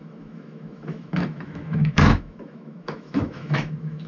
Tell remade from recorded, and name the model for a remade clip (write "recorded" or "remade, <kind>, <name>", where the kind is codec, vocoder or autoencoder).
remade, autoencoder, DAC-VAE